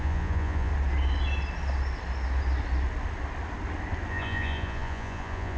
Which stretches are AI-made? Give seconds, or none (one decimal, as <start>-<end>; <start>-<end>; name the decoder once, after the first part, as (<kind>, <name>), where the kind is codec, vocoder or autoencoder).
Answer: 0.0-0.7 (vocoder, Vocos); 4.1-5.6